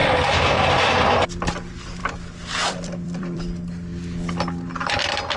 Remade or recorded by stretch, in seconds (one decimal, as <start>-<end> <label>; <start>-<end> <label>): 0.0-0.9 remade; 0.9-2.0 recorded; 2.0-3.4 remade; 3.4-5.4 recorded